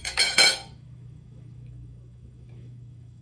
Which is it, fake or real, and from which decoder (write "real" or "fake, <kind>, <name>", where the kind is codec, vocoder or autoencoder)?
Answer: fake, autoencoder, DAC-VAE